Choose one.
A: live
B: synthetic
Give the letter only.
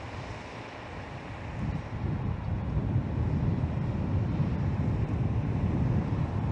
A